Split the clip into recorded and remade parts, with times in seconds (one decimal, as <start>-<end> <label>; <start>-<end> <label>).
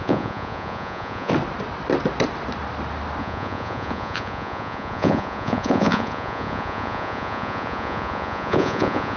0.0-1.3 remade; 1.3-3.2 recorded; 3.2-9.2 remade